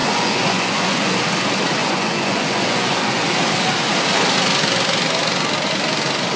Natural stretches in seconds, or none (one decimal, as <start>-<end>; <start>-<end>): 1.2-1.8; 3.2-6.4